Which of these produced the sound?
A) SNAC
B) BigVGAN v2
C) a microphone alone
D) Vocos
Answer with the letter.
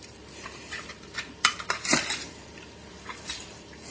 B